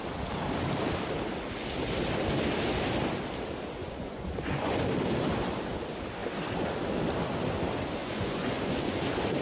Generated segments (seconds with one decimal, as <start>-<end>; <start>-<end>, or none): 3.8-4.8; 8.0-9.0